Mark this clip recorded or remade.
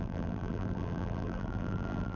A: remade